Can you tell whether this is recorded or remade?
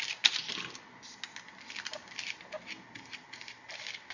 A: recorded